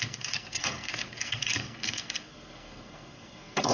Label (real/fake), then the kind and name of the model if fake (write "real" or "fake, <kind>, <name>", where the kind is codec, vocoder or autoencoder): fake, codec, SNAC